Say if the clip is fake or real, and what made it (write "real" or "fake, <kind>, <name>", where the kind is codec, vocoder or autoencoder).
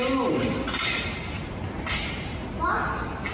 real